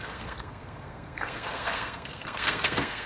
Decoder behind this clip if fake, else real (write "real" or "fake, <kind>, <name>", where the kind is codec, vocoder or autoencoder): fake, codec, SNAC